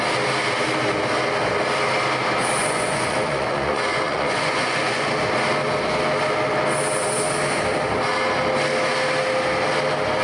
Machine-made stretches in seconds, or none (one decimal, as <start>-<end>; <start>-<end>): 2.6-5.1